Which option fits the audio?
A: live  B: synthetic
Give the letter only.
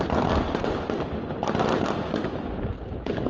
A